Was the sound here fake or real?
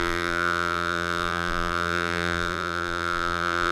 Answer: fake